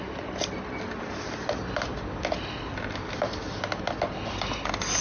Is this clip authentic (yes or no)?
yes